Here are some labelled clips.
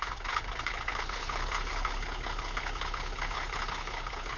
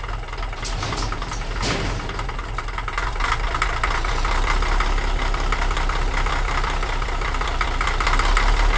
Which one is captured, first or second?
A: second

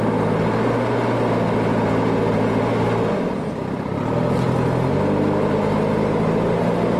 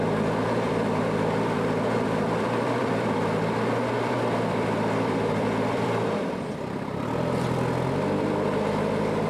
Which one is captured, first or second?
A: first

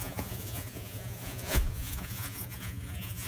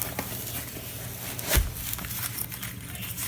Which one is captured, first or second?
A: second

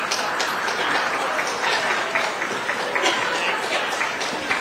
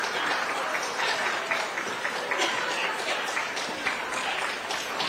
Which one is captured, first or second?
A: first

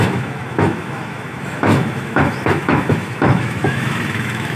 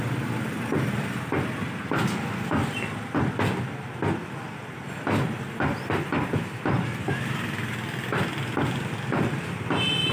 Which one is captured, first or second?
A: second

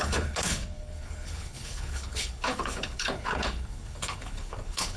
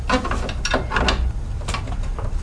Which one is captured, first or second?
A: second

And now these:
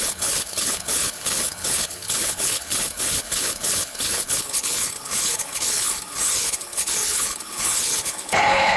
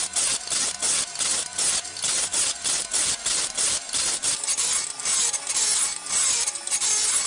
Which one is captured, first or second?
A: second